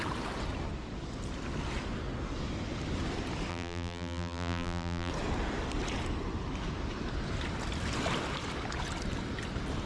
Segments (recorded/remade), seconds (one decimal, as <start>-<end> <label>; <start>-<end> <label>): 0.0-3.5 recorded; 3.5-5.1 remade; 5.1-9.9 recorded